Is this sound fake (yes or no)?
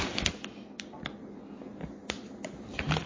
no